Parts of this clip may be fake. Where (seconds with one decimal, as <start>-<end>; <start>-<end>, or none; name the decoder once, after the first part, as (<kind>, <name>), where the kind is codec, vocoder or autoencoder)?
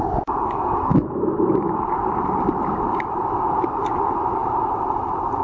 0.9-3.9 (vocoder, BigVGAN v2); 4.4-5.4